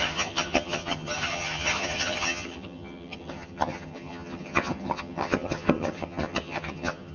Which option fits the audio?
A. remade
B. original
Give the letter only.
A